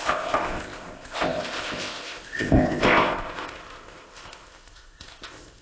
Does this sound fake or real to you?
fake